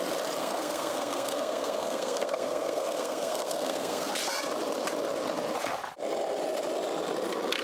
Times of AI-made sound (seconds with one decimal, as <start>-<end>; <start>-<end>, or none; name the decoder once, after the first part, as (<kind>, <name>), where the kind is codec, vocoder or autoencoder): 0.4-4.1 (codec, SNAC)